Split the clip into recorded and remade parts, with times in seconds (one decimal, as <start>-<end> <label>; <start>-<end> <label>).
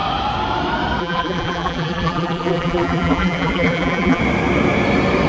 0.0-1.0 recorded; 1.0-4.2 remade; 4.2-5.3 recorded